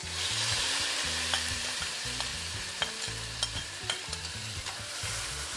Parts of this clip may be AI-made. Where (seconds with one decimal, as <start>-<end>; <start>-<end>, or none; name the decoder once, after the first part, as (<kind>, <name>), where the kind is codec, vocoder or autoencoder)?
0.0-5.6 (vocoder, BigVGAN v2)